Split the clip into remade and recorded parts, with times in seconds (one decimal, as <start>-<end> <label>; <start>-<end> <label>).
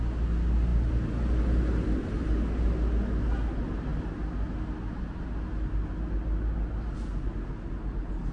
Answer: 0.0-8.3 recorded